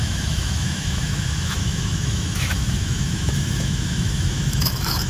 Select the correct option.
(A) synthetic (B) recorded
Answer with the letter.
A